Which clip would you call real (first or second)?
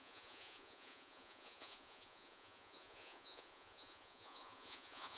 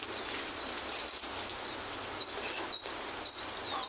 second